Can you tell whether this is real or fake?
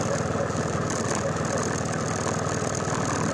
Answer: real